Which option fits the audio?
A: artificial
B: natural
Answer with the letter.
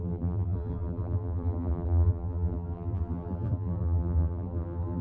A